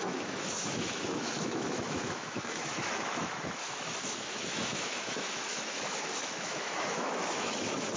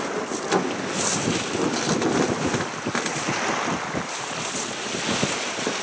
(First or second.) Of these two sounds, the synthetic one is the first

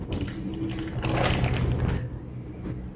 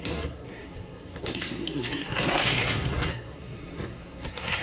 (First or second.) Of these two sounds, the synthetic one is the second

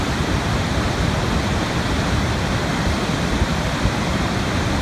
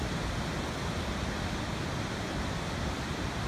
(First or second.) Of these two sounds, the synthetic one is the first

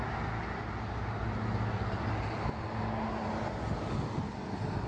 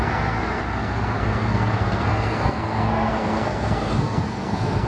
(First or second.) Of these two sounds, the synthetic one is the second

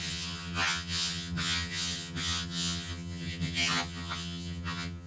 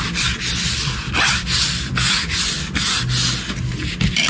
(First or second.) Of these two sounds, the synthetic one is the first